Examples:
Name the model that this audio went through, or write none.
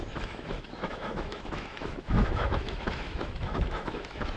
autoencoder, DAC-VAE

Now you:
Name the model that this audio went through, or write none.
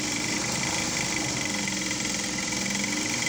none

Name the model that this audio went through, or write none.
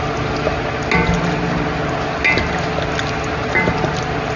none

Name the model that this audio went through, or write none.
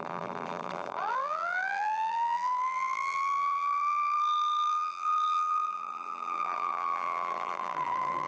vocoder, BigVGAN v2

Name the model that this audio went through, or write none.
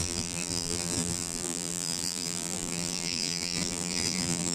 vocoder, BigVGAN v2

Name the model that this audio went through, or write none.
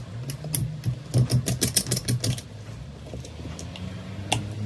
none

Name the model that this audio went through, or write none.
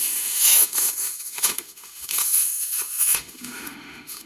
autoencoder, DAC-VAE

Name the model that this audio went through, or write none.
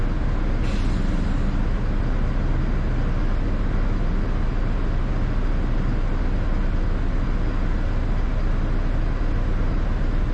none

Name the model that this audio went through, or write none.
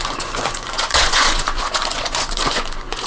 vocoder, Vocos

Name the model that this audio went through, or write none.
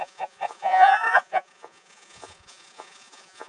vocoder, Vocos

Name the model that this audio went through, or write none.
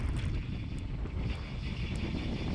none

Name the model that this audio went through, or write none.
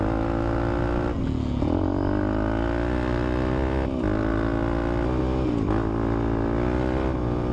none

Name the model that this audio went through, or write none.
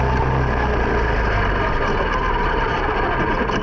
none